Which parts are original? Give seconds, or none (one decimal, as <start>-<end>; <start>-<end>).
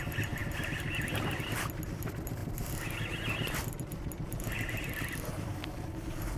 0.0-6.4